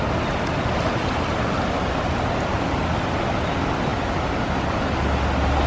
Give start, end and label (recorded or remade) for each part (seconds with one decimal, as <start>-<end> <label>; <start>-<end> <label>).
0.0-5.7 recorded